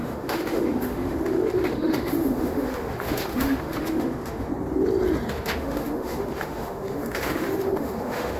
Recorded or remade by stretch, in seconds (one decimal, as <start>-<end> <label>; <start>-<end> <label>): 0.0-4.5 remade; 4.5-5.3 recorded; 5.3-8.4 remade